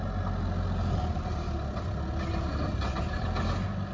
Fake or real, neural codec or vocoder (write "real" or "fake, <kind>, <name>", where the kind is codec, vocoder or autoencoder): real